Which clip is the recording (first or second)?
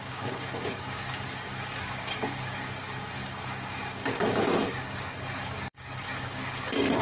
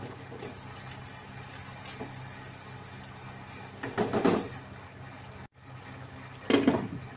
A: second